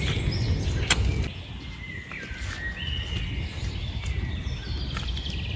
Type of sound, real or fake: real